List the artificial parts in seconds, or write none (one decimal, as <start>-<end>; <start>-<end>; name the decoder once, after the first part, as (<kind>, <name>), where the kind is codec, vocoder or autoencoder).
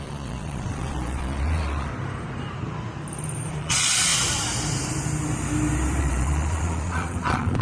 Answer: 0.0-1.9 (vocoder, Vocos); 3.5-4.1; 6.0-7.6